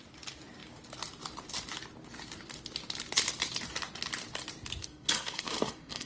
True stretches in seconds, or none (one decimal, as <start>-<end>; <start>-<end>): 0.0-4.8

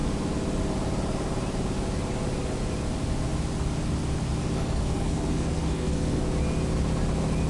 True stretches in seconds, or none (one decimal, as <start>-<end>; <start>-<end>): 0.0-4.4; 6.2-7.5